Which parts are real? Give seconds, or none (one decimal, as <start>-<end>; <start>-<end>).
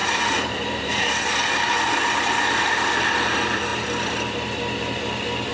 0.9-5.5